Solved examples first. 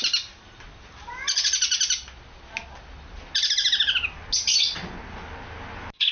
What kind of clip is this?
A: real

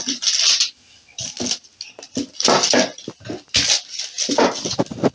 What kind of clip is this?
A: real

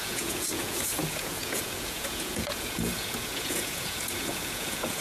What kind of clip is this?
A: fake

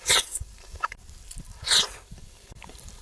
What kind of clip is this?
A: real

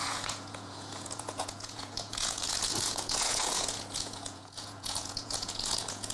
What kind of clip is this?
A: fake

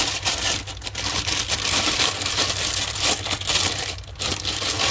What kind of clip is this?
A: real